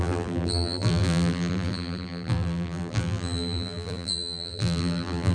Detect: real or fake fake